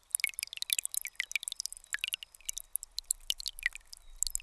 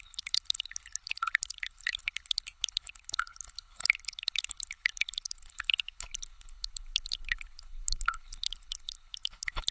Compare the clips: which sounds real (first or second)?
first